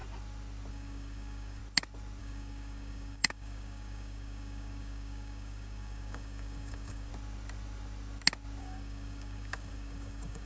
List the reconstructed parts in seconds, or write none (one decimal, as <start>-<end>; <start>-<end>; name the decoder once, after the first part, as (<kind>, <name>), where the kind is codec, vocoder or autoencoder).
0.7-1.6 (codec, DAC); 2.2-7.1; 8.6-10.5